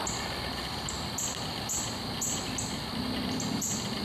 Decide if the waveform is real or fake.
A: real